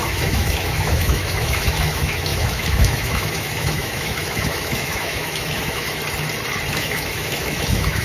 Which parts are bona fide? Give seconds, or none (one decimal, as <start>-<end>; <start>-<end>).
6.0-6.7